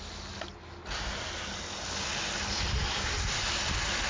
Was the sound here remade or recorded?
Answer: recorded